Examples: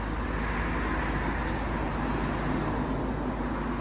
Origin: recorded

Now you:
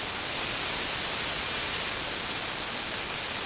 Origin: recorded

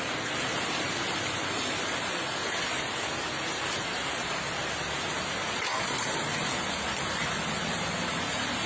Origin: recorded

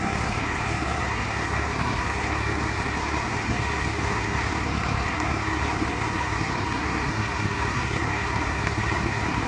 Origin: remade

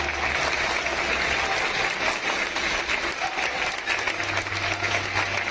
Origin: recorded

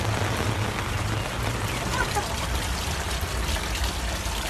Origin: recorded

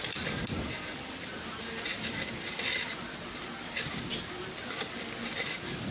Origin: recorded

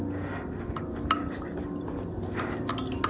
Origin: recorded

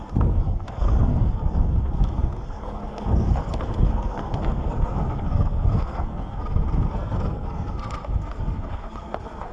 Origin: remade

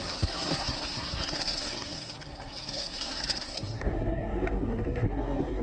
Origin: remade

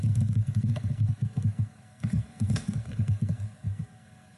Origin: remade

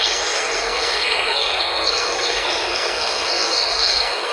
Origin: remade